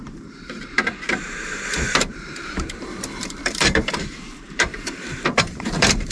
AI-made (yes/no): yes